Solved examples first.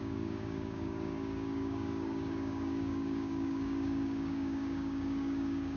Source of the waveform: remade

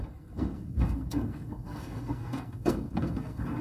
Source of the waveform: remade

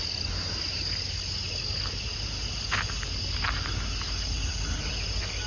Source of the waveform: recorded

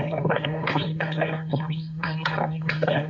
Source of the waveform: remade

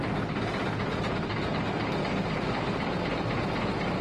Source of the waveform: recorded